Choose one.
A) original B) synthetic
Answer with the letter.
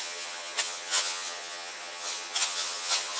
B